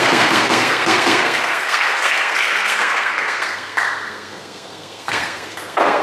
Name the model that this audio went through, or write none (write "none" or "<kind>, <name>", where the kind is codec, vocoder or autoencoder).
codec, SNAC